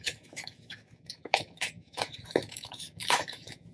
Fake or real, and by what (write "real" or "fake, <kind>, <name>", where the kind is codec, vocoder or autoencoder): fake, autoencoder, DAC-VAE